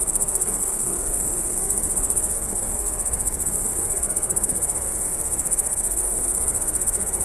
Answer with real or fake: fake